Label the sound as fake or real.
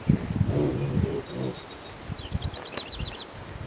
real